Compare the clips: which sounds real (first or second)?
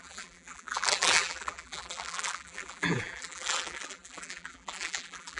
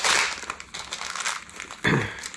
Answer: second